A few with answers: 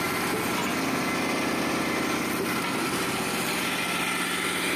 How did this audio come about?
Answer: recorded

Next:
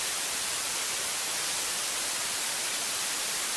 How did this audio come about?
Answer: remade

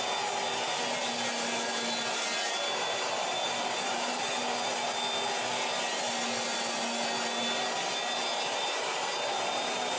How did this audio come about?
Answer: recorded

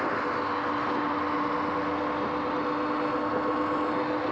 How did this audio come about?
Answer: recorded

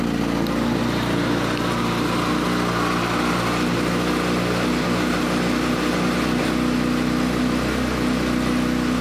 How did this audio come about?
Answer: recorded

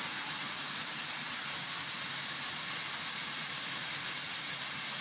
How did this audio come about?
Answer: recorded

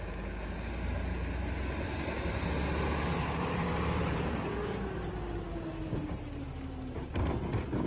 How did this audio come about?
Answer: recorded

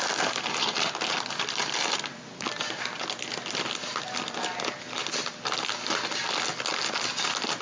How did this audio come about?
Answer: recorded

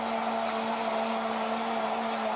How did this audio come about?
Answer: recorded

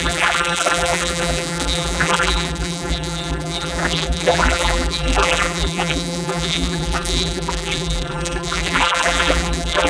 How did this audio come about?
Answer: remade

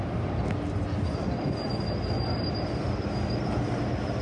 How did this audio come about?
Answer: recorded